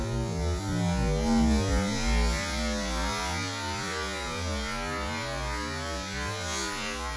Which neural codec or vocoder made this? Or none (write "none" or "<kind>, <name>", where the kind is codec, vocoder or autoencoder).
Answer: none